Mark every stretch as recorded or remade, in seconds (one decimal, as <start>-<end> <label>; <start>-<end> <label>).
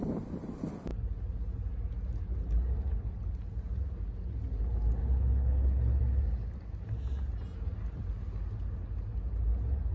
0.0-5.0 recorded; 5.0-6.0 remade; 6.0-9.9 recorded